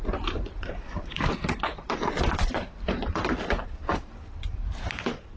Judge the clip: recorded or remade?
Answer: remade